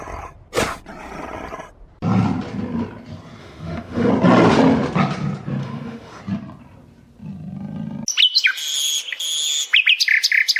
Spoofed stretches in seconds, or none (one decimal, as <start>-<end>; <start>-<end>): 3.4-4.1; 5.6-6.2

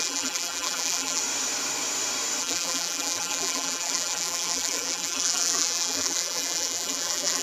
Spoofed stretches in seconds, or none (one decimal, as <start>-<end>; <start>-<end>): 0.0-1.2; 2.4-7.4

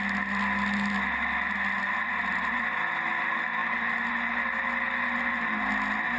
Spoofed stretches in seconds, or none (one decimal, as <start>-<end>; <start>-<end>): none